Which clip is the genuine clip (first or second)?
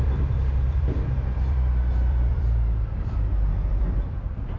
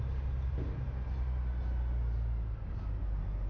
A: second